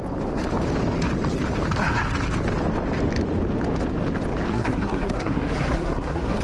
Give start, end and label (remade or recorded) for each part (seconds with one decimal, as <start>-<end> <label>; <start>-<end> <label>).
0.0-4.5 recorded; 4.5-6.4 remade